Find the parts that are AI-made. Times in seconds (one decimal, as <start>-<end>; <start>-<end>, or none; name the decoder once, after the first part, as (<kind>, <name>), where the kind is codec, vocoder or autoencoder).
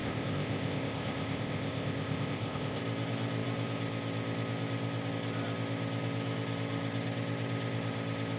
0.0-2.8 (codec, ZipCodec)